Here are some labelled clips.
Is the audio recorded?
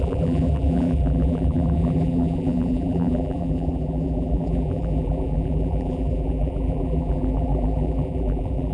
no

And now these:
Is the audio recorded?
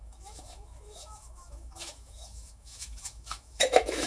no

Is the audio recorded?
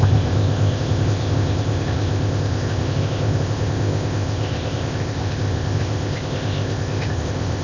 no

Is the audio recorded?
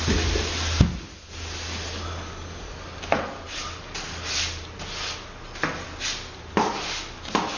yes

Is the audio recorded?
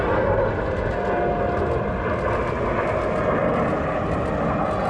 yes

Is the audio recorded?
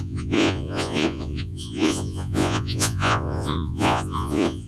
no